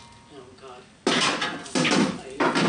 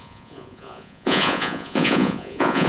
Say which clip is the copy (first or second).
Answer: second